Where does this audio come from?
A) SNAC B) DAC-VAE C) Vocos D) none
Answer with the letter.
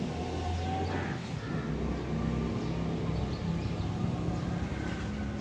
D